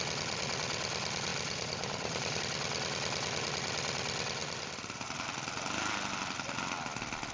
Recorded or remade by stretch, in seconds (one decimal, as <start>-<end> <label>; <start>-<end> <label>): 0.0-1.3 recorded; 1.3-2.4 remade; 2.4-4.4 recorded; 4.4-5.1 remade; 5.1-7.3 recorded